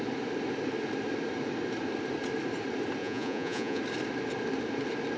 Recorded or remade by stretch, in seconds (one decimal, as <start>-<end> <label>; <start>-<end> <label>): 0.0-3.0 recorded; 3.0-3.8 remade; 3.8-5.2 recorded